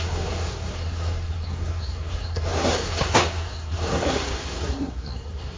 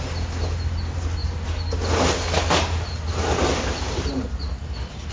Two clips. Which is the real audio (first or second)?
second